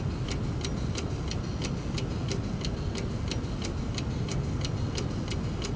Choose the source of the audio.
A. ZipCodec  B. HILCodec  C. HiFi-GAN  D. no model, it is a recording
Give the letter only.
D